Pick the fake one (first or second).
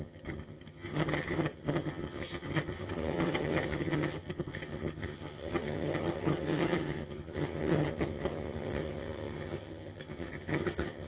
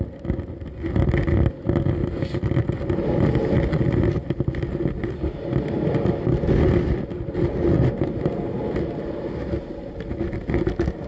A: first